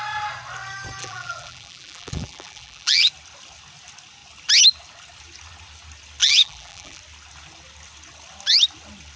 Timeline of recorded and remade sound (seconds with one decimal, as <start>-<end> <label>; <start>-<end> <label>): 0.0-1.0 recorded; 1.0-3.1 remade; 3.1-6.2 recorded; 6.2-7.0 remade; 7.0-9.2 recorded